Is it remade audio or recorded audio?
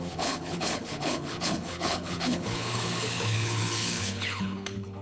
remade